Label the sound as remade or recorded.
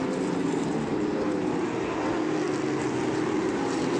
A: recorded